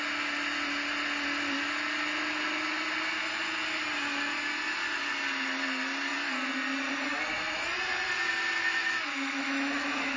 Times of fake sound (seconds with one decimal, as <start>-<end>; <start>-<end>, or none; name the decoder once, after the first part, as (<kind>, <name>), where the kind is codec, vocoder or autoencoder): 8.8-10.2 (autoencoder, DAC-VAE)